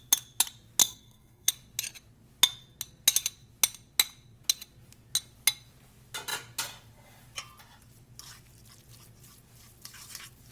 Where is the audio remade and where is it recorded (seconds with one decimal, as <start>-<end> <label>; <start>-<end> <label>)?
0.0-0.8 recorded; 0.8-1.5 remade; 1.5-10.5 recorded